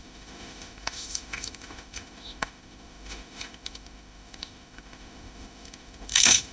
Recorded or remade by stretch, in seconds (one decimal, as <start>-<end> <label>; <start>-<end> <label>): 0.0-6.5 remade